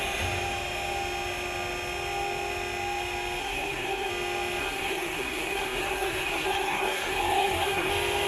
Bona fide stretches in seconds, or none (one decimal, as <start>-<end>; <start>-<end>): 0.0-3.4; 4.1-4.6; 7.9-8.3